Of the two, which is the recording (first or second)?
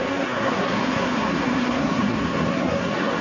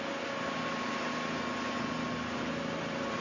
second